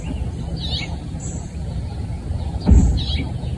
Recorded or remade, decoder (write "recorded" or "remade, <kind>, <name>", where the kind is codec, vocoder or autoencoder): recorded